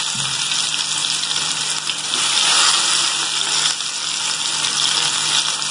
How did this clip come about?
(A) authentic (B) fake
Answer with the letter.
A